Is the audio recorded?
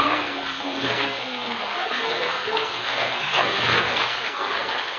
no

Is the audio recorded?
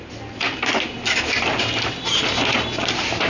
yes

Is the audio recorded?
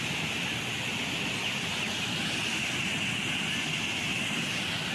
yes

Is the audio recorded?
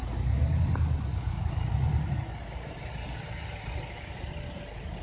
yes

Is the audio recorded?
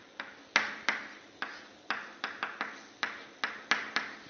yes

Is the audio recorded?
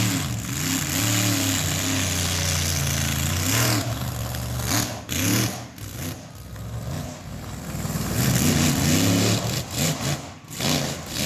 yes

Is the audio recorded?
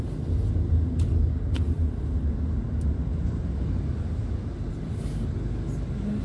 yes